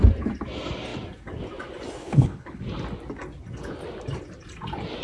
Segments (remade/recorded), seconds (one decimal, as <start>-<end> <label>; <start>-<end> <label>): 0.0-2.0 recorded; 2.0-2.6 remade; 2.6-5.0 recorded